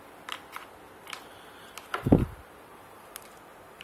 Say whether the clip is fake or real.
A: real